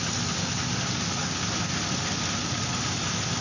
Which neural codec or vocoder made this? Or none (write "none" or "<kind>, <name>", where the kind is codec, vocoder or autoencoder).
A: none